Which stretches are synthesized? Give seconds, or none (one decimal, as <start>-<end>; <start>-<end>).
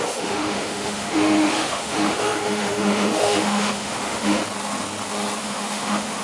0.0-4.4; 5.4-6.2